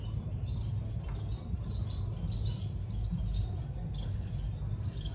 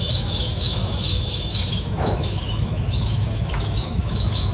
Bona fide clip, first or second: first